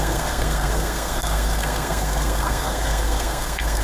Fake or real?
fake